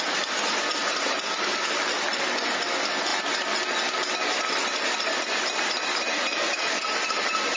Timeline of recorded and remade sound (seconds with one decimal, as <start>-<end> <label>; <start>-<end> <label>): 0.0-7.6 recorded